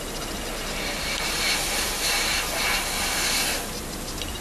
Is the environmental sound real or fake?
real